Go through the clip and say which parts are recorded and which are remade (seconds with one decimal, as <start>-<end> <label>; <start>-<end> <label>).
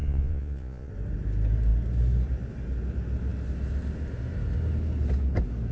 0.0-0.9 remade; 0.9-5.7 recorded